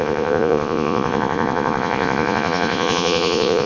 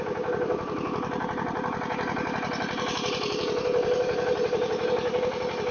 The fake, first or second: first